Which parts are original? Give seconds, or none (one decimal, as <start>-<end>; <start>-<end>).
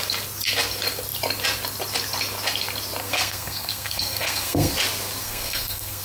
0.0-3.0; 4.7-5.2